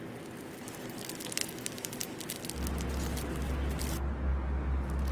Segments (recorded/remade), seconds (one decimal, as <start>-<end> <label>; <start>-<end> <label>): 0.0-5.1 recorded